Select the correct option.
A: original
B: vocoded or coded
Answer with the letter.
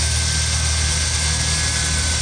A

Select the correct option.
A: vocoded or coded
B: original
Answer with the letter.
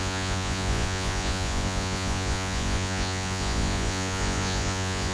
A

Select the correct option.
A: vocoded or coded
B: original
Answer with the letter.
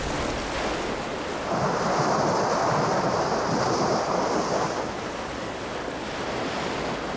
B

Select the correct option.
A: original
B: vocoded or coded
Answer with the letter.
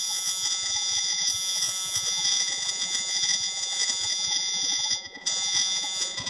B